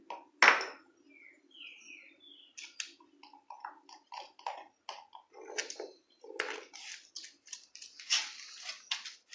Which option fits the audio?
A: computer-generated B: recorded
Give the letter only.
B